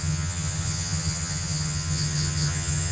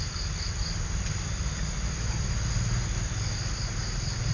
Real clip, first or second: second